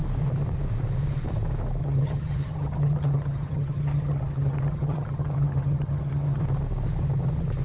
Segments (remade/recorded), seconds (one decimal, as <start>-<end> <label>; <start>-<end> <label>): 0.0-1.8 recorded; 1.8-6.4 remade; 6.4-7.6 recorded